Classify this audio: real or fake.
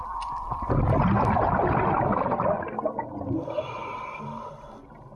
real